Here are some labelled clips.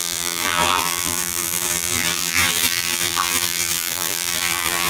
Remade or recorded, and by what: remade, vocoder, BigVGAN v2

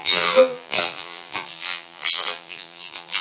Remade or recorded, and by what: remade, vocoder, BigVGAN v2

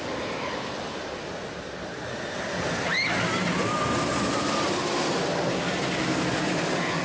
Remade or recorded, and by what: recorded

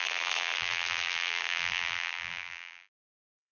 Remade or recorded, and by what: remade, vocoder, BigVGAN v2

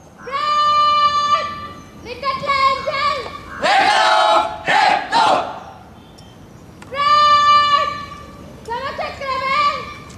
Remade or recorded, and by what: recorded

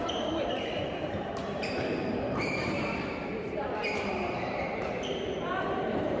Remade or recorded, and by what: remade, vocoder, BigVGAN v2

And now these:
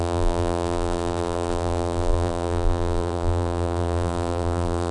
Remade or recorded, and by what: remade, vocoder, BigVGAN v2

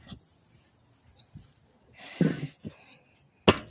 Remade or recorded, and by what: recorded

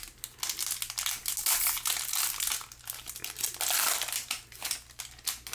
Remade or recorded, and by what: recorded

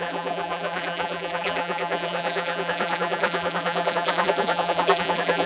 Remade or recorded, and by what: remade, vocoder, BigVGAN v2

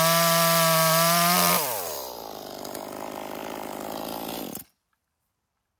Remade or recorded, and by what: remade, vocoder, BigVGAN v2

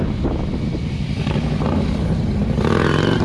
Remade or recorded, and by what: recorded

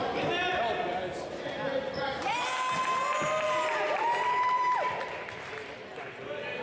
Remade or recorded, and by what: recorded